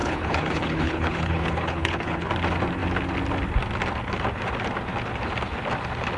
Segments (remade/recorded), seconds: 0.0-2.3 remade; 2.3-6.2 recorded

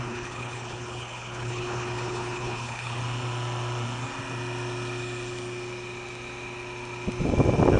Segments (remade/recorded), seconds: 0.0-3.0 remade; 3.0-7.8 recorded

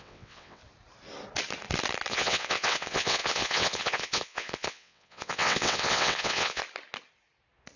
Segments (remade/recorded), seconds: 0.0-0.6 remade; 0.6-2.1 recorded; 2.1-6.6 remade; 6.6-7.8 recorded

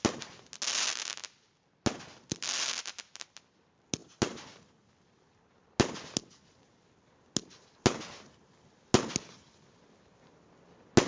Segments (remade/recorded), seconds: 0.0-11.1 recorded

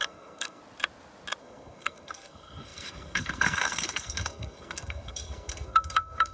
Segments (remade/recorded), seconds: 0.0-0.6 remade; 0.6-1.4 recorded; 1.4-6.3 remade

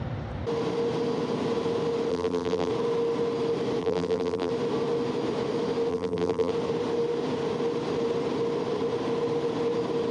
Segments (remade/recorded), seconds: 0.0-2.1 recorded; 2.1-2.7 remade; 2.7-3.8 recorded; 3.8-4.5 remade; 4.5-5.9 recorded; 5.9-6.5 remade; 6.5-10.1 recorded

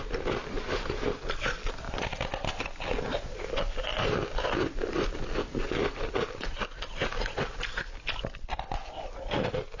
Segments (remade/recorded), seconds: 0.0-9.8 recorded

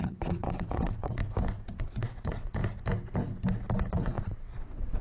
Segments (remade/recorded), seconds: 0.0-1.2 remade; 1.2-1.7 recorded; 1.7-2.6 remade; 2.6-3.9 recorded; 3.9-5.0 remade